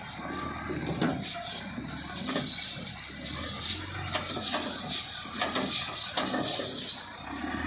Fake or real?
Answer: real